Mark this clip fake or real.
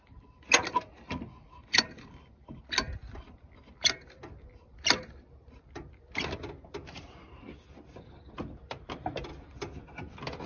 real